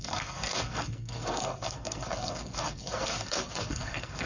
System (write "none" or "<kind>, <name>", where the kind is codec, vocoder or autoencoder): codec, SNAC